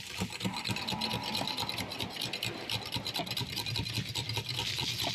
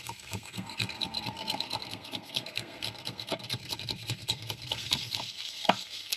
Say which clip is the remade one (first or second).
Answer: second